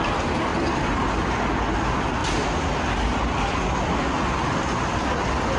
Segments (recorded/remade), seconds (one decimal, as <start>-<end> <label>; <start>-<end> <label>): 0.0-0.5 recorded; 0.5-1.1 remade; 1.1-5.6 recorded